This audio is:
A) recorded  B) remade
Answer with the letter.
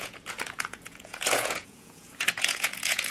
B